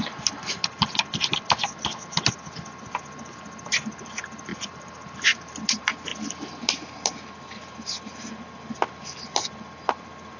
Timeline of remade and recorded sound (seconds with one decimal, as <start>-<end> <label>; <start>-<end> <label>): 0.0-4.5 recorded; 4.5-5.5 remade; 5.5-10.4 recorded

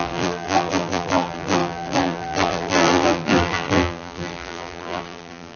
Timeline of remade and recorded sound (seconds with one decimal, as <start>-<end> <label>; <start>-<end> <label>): 0.0-5.6 remade